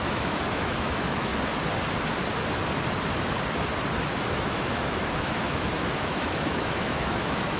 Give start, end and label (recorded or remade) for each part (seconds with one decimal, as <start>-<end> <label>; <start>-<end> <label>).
0.0-1.3 remade; 1.3-4.3 recorded; 4.3-7.6 remade